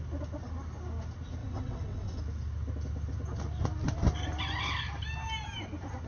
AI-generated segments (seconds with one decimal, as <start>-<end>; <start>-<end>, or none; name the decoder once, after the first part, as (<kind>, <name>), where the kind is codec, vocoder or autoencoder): 1.4-2.2 (vocoder, WaveNeXt)